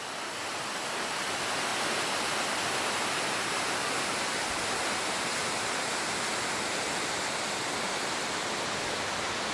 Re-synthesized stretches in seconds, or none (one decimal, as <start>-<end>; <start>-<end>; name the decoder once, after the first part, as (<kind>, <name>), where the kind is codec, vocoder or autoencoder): none